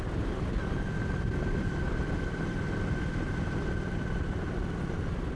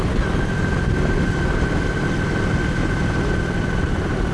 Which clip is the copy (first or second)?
first